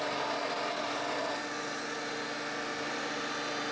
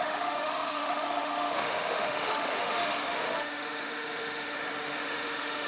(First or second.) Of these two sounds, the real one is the first